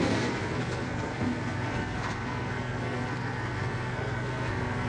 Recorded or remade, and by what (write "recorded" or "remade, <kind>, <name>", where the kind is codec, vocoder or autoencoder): remade, codec, SNAC